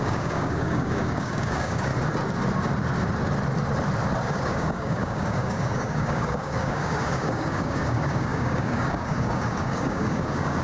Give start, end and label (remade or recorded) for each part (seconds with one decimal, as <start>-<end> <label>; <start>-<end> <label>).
0.0-1.9 remade; 1.9-4.2 recorded; 4.2-10.6 remade